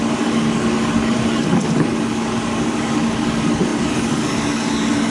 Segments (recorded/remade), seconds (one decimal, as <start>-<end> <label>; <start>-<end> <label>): 0.0-5.1 remade